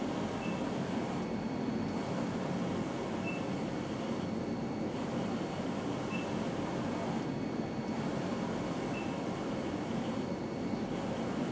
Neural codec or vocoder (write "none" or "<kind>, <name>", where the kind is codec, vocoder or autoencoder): none